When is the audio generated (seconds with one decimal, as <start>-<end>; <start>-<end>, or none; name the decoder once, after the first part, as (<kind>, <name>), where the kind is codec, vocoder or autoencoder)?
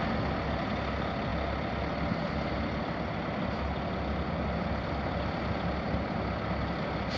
none